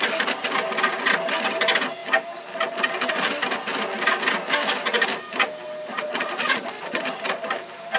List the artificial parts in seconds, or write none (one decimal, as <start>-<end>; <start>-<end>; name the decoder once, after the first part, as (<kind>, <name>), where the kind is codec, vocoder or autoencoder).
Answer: 5.9-7.0 (vocoder, Vocos)